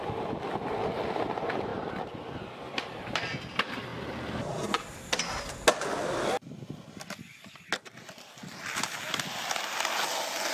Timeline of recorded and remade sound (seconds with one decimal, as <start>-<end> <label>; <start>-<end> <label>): 0.0-10.5 recorded